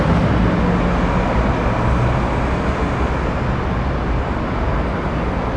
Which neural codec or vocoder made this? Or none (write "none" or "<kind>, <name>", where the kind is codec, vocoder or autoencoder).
none